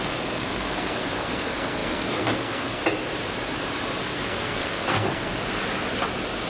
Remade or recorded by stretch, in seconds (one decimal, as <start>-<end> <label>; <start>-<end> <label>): 0.0-2.8 remade; 2.8-4.0 recorded; 4.0-5.3 remade; 5.3-6.5 recorded